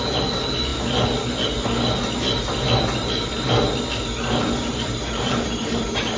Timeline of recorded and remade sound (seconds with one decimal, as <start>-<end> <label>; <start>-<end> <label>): 0.0-4.6 recorded; 4.6-6.2 remade

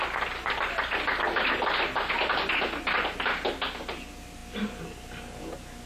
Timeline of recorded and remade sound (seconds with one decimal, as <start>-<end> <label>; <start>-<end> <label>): 0.0-5.9 recorded

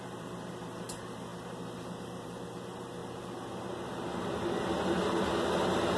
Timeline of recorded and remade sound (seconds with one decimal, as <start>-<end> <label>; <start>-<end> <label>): 0.0-3.0 remade; 3.0-5.6 recorded; 5.6-6.0 remade

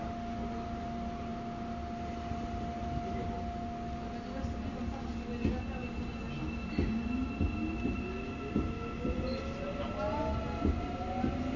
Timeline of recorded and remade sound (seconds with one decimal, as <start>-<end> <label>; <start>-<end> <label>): 0.0-11.6 recorded

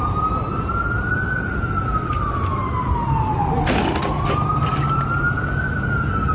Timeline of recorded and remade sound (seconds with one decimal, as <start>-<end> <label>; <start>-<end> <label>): 0.0-6.3 recorded